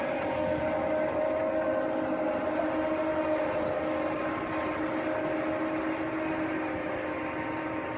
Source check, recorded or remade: recorded